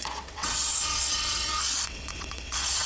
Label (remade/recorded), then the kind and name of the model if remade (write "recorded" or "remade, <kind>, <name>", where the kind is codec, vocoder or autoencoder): remade, vocoder, WaveNeXt